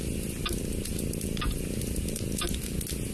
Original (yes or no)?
yes